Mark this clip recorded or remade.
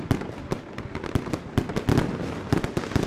recorded